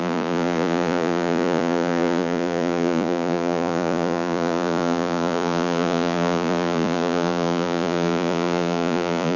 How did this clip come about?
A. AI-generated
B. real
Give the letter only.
A